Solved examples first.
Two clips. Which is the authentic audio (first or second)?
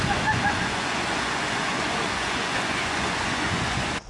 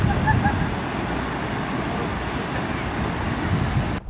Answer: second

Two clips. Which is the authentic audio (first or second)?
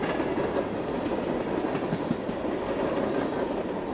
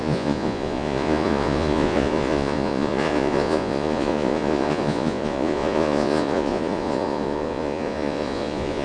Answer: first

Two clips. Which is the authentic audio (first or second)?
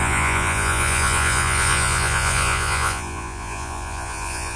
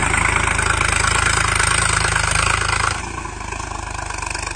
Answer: second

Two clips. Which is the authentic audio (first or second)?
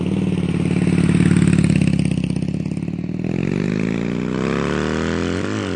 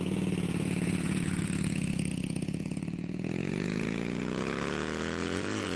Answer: first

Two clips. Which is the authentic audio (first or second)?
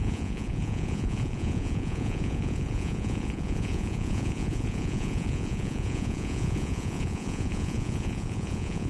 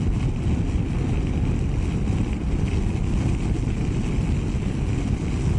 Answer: second